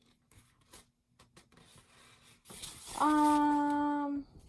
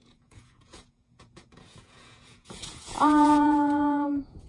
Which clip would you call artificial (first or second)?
second